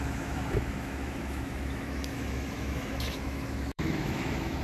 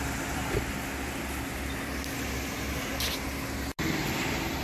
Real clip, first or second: second